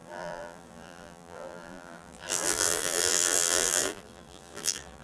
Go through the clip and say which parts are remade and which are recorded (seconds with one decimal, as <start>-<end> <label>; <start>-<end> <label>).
0.0-5.0 remade